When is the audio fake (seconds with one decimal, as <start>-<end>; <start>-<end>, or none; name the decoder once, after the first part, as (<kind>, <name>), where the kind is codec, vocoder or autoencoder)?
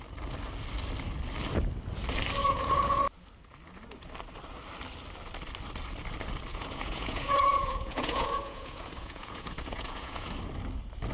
2.4-3.0 (vocoder, Vocos); 6.5-10.3